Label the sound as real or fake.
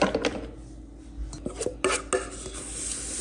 real